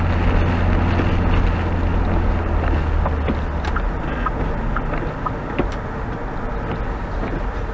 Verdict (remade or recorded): recorded